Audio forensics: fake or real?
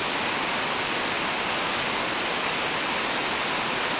real